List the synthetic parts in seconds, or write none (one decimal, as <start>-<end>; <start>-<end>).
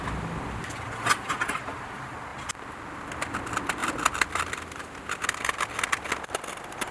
3.8-5.2